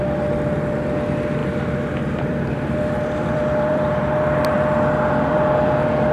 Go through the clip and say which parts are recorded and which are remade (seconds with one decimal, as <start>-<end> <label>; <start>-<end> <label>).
0.0-1.4 recorded; 1.4-5.1 remade; 5.1-6.1 recorded